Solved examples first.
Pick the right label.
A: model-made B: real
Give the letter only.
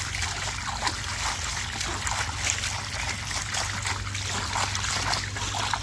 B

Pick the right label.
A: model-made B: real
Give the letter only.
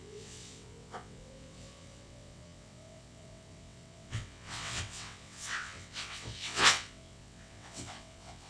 A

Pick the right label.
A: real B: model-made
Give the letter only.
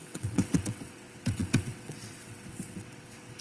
B